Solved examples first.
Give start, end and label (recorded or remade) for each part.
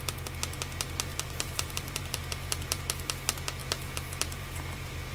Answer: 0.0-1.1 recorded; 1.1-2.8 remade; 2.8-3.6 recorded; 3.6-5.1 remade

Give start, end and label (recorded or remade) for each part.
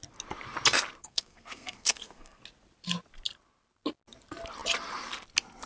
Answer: 0.0-1.0 recorded; 1.0-2.4 remade; 2.4-5.7 recorded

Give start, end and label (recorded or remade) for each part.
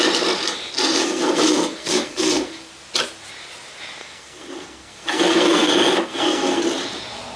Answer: 0.0-1.0 recorded; 1.0-2.7 remade; 2.7-4.0 recorded; 4.0-6.6 remade; 6.6-7.4 recorded